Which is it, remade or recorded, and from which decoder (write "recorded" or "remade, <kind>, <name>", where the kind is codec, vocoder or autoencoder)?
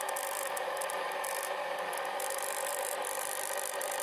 remade, vocoder, BigVGAN v2